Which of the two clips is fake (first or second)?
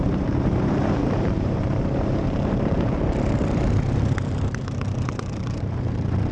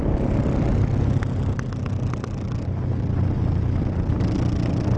first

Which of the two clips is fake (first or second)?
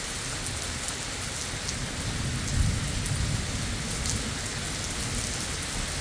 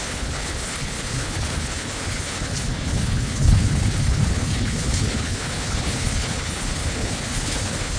second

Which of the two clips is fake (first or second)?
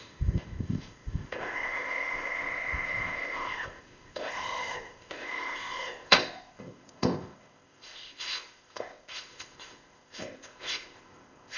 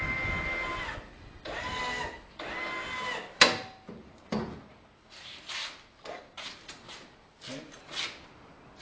first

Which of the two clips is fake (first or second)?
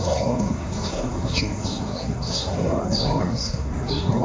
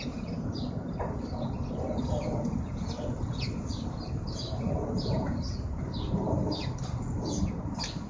first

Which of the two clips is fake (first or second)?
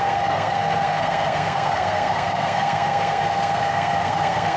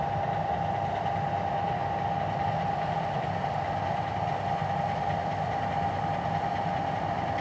first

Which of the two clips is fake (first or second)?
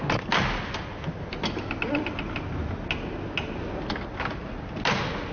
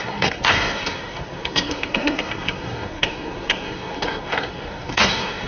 second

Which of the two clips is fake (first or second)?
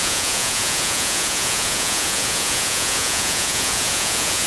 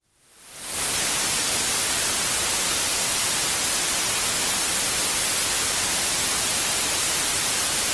first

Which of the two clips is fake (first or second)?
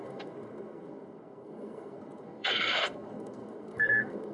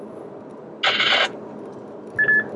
first